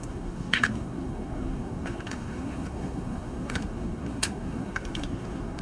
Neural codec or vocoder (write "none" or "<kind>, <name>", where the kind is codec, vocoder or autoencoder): codec, SNAC